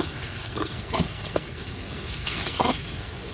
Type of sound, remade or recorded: remade